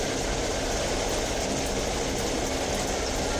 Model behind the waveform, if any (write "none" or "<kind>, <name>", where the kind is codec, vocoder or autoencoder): none